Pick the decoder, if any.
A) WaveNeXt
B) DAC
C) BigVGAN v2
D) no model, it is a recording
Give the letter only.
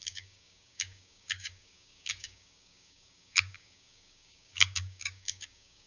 B